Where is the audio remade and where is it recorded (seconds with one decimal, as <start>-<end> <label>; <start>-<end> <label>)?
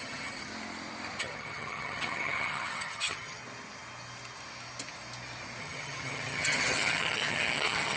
0.0-0.5 remade; 0.5-1.2 recorded; 1.2-3.4 remade; 3.4-5.6 recorded; 5.6-8.0 remade